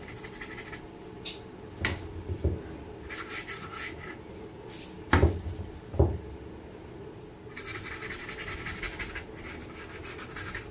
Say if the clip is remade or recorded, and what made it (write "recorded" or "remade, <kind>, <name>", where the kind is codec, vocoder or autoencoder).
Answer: recorded